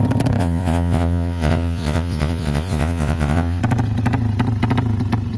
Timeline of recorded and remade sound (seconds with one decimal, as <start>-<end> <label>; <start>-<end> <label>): 0.0-0.4 recorded; 0.4-3.6 remade; 3.6-5.4 recorded